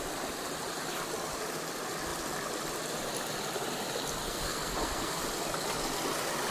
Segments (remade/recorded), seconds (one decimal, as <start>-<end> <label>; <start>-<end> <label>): 0.0-4.2 recorded; 4.2-5.2 remade; 5.2-6.5 recorded